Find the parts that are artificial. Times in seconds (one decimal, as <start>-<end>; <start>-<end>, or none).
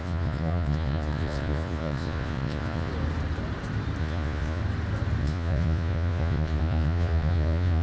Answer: 0.0-2.9; 4.0-4.6; 5.2-7.8